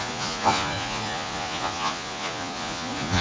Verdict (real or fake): fake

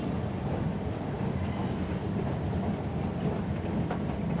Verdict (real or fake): real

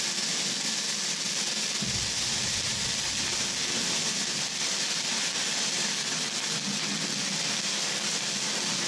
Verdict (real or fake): real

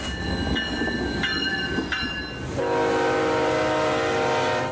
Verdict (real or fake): real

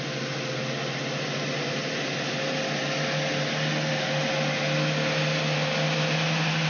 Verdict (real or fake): real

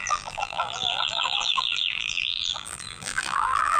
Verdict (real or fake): fake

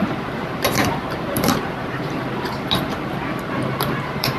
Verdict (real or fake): fake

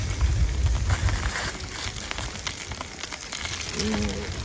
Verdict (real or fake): real